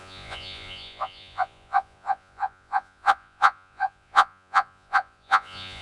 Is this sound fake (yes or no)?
yes